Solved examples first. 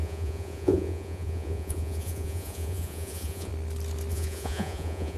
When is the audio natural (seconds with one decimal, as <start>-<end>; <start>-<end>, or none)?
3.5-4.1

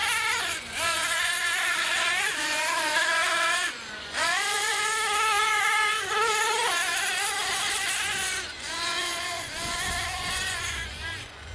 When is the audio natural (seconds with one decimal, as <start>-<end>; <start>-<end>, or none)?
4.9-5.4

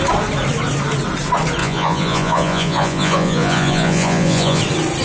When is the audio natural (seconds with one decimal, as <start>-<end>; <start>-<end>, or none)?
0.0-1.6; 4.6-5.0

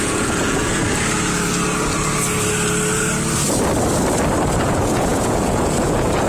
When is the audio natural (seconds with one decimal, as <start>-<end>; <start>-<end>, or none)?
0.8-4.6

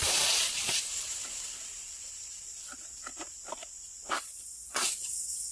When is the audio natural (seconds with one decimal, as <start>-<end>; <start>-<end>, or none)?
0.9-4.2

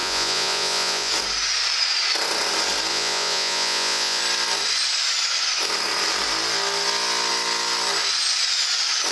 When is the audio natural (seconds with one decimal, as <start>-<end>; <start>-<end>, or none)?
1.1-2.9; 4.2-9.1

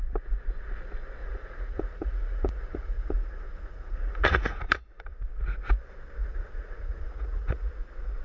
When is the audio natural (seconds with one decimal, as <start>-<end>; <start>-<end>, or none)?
0.0-1.2; 5.2-6.2; 7.7-8.2